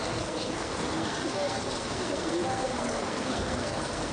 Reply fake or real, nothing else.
fake